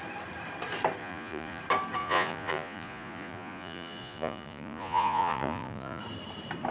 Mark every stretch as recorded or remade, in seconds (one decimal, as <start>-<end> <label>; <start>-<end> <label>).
0.0-1.0 recorded; 1.0-1.6 remade; 1.6-2.0 recorded; 2.0-6.0 remade; 6.0-6.7 recorded